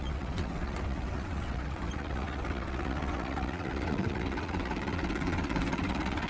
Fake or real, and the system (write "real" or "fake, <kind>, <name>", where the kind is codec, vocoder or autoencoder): fake, vocoder, WaveNeXt